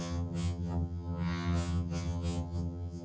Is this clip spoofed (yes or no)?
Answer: yes